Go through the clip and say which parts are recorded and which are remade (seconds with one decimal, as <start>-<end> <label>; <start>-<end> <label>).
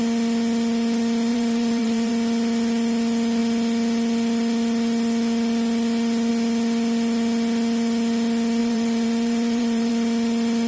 0.0-1.3 recorded; 1.3-2.1 remade; 2.1-8.6 recorded; 8.6-9.9 remade; 9.9-10.7 recorded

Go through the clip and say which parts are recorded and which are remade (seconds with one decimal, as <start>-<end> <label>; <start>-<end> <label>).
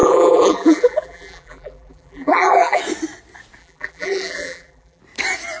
0.0-2.8 remade; 2.8-3.6 recorded; 3.6-5.0 remade; 5.0-5.6 recorded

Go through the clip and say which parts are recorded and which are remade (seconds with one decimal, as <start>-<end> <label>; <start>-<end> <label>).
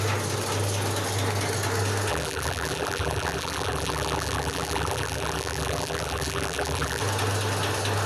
0.0-2.1 recorded; 2.1-7.0 remade; 7.0-8.1 recorded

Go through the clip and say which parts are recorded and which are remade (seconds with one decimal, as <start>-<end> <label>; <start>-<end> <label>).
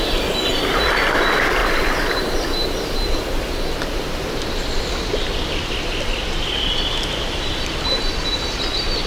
0.0-1.6 recorded; 1.6-3.9 remade; 3.9-6.1 recorded; 6.1-8.0 remade; 8.0-9.1 recorded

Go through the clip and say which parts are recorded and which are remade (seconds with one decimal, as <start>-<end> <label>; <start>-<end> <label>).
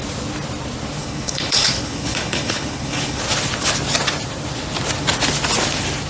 0.0-1.0 recorded; 1.0-3.2 remade; 3.2-6.1 recorded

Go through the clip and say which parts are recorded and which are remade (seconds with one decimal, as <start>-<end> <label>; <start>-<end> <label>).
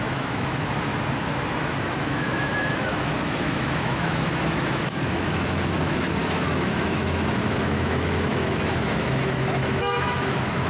0.0-0.9 remade; 0.9-2.0 recorded; 2.0-10.7 remade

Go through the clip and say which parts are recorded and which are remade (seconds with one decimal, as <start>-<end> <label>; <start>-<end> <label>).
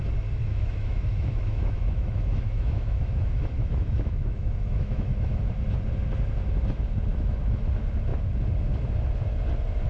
0.0-0.4 recorded; 0.4-5.4 remade; 5.4-7.1 recorded; 7.1-7.6 remade; 7.6-9.9 recorded